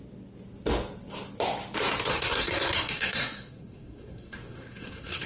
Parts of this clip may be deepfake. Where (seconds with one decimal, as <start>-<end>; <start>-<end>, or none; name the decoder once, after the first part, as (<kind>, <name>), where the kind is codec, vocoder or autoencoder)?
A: 2.1-5.3 (codec, SNAC)